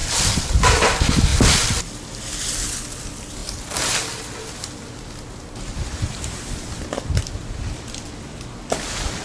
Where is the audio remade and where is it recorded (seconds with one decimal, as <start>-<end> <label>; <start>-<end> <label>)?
0.0-0.6 remade; 0.6-1.3 recorded; 1.3-2.5 remade; 2.5-7.4 recorded; 7.4-8.0 remade; 8.0-9.2 recorded